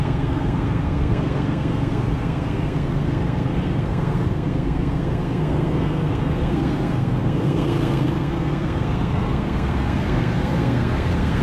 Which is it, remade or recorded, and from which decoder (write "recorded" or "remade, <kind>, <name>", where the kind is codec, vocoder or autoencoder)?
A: remade, codec, SNAC